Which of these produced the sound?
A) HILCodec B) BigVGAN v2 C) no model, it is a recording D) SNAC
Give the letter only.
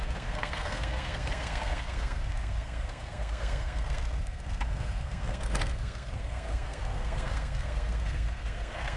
D